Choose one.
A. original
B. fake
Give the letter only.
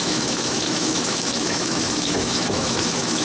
B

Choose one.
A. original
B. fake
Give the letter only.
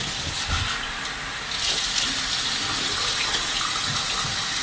A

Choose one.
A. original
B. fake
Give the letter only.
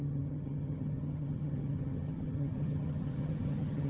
B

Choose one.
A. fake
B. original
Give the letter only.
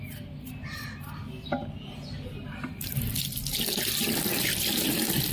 B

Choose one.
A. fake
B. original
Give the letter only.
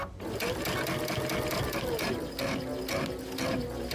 B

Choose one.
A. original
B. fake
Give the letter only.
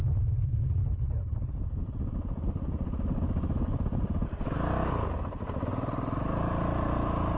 A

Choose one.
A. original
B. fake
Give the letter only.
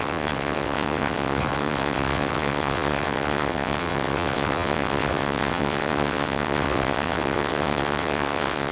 B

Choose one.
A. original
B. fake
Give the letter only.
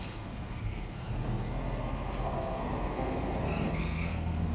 B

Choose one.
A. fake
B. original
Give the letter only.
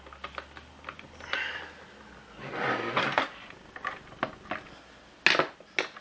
B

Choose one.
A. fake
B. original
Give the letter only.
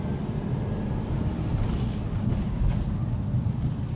B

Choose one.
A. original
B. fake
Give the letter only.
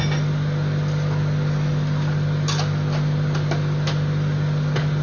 A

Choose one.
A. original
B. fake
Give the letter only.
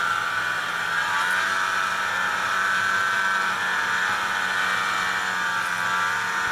A